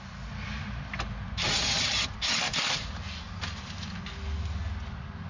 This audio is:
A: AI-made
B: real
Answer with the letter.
B